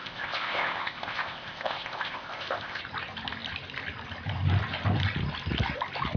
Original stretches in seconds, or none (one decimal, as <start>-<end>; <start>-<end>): 2.8-6.2